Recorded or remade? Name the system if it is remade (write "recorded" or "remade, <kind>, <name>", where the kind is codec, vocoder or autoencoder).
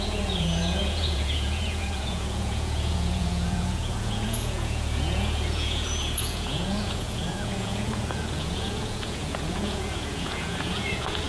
remade, vocoder, Vocos